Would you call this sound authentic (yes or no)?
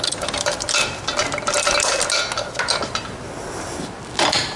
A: yes